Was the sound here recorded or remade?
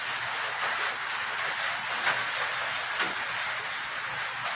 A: recorded